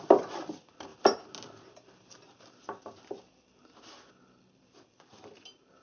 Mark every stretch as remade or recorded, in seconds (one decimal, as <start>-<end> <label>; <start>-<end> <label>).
0.0-5.8 recorded